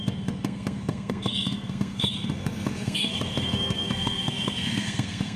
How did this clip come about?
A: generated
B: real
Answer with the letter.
A